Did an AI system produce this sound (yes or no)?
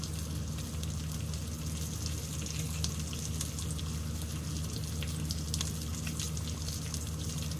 no